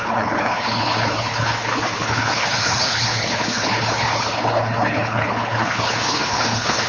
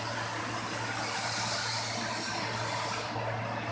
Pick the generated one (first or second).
first